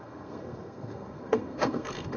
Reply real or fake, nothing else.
fake